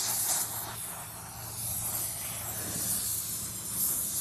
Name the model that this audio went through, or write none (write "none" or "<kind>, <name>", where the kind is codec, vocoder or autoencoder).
none